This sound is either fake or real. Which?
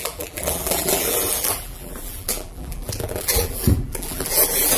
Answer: fake